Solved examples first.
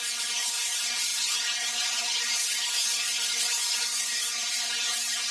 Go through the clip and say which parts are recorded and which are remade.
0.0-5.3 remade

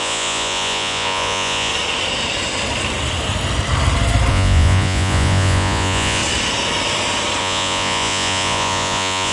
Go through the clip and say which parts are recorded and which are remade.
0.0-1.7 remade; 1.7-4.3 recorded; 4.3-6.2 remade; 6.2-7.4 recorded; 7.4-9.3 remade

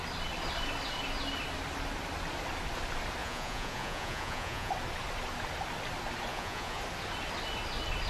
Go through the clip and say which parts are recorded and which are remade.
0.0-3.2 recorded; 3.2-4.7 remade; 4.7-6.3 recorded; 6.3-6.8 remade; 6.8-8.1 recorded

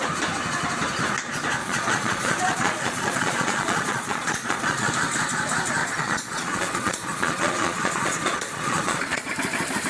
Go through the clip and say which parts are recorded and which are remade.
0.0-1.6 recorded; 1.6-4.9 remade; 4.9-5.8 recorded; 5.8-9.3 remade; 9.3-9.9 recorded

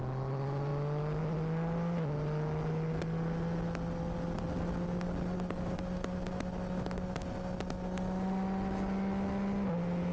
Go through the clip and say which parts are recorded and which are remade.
0.0-10.1 recorded

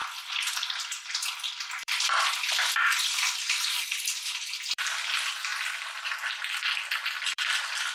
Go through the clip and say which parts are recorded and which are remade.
0.0-7.9 remade